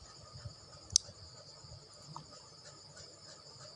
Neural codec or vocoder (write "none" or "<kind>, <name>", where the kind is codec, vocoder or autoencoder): none